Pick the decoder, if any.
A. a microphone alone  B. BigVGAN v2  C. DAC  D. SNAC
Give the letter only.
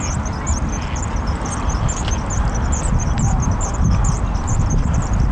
A